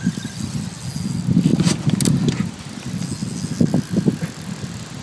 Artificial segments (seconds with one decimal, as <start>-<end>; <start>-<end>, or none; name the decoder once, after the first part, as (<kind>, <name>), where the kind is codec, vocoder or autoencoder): none